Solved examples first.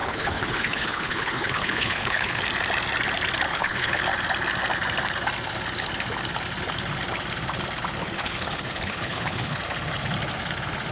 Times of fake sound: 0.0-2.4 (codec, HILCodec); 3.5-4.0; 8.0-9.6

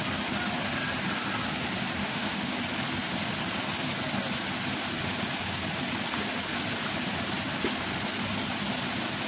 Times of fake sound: 2.0-2.5 (autoencoder, DAC-VAE)

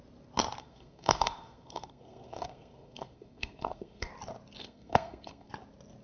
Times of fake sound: 0.6-4.1 (codec, SNAC); 4.6-5.5

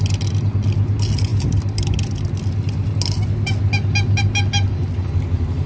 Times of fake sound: none

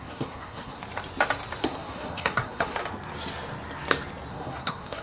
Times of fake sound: 0.0-0.8 (codec, SNAC); 1.6-2.8; 4.3-5.0

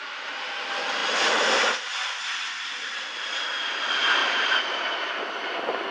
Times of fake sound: 4.2-4.7 (vocoder, BigVGAN v2)

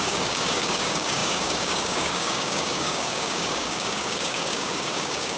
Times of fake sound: 0.0-5.4 (codec, DAC)

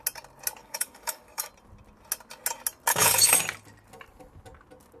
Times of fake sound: 0.6-1.5 (codec, DAC); 2.9-3.4